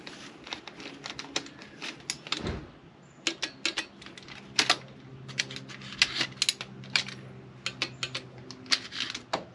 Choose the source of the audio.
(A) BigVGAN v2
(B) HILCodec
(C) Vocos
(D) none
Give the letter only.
D